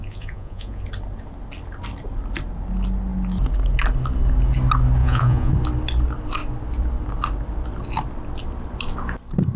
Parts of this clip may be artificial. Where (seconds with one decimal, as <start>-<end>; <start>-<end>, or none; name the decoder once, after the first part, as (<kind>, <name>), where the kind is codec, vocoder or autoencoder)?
0.0-0.8 (vocoder, Vocos); 5.0-5.5